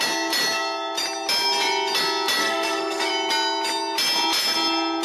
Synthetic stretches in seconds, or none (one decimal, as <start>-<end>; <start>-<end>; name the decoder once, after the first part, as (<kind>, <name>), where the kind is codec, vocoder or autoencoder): 2.4-3.1 (codec, SNAC)